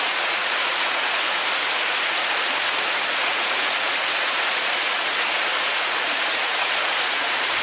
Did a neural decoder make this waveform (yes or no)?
yes